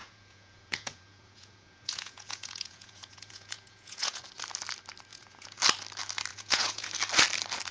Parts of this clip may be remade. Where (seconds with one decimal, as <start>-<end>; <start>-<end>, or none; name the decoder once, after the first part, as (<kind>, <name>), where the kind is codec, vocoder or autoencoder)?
0.0-4.2 (vocoder, Vocos); 5.1-5.6; 6.3-6.9